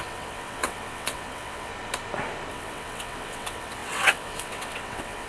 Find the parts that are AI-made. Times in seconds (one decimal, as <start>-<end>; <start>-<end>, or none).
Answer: 0.0-1.7; 2.5-5.3